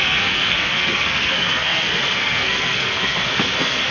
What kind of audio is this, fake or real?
fake